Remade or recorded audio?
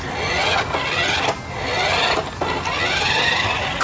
recorded